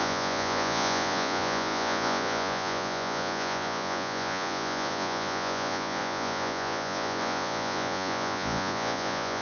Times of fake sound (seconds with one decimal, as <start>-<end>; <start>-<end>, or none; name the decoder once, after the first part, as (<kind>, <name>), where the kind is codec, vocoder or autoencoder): 0.0-9.4 (vocoder, Vocos)